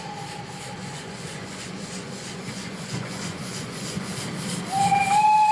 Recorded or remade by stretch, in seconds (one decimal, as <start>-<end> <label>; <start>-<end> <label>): 0.0-0.8 recorded; 0.8-4.1 remade; 4.1-5.5 recorded